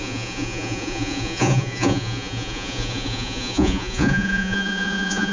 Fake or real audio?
fake